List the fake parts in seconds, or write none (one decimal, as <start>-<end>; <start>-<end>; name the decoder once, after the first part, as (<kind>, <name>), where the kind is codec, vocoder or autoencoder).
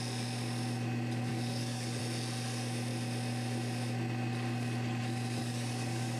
1.3-2.0 (codec, DAC); 5.4-6.2